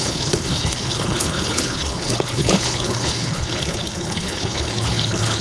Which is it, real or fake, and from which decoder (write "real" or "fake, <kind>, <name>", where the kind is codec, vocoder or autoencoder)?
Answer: fake, codec, HILCodec